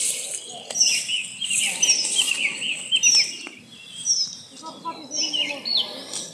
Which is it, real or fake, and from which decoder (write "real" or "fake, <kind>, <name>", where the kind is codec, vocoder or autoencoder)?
real